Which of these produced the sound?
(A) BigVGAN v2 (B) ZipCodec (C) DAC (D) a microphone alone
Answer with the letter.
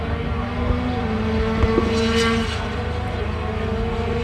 D